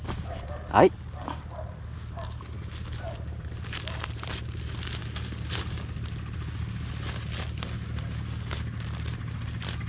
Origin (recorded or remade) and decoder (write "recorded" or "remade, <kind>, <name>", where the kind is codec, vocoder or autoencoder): recorded